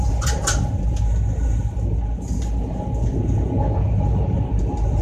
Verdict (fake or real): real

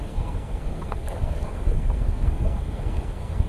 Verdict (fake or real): fake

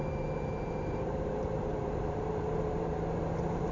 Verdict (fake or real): fake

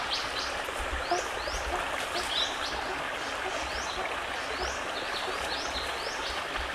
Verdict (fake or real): real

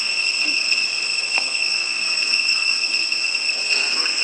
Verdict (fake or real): fake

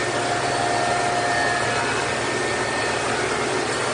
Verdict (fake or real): real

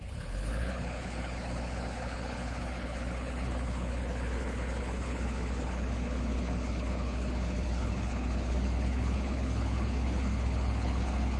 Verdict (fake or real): fake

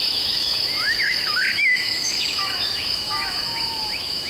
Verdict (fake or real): fake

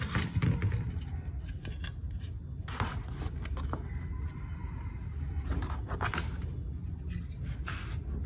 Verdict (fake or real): real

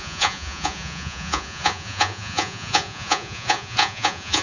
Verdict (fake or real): fake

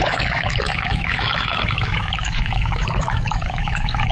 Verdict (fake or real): fake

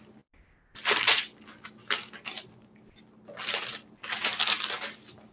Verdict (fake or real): real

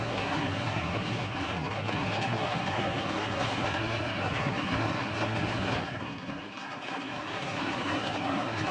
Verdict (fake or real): fake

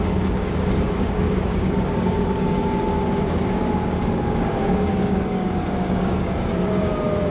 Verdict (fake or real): fake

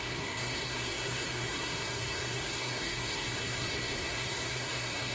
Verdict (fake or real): fake